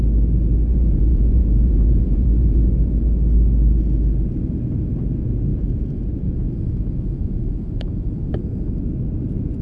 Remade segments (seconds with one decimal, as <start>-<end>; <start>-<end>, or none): 0.7-2.7; 5.5-8.1